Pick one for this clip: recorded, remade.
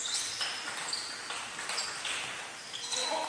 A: recorded